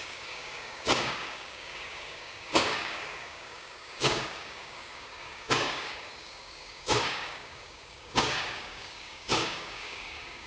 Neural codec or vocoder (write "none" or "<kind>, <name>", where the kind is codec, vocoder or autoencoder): codec, DAC